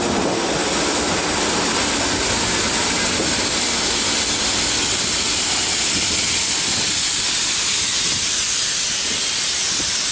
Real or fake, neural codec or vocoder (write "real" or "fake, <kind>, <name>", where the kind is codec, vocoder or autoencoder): real